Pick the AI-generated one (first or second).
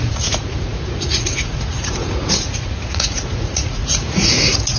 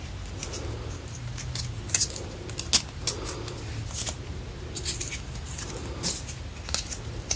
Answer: first